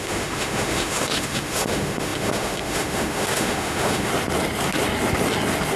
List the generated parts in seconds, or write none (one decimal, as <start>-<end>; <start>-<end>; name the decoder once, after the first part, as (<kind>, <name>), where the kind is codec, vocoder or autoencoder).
0.0-4.1 (autoencoder, DAC-VAE)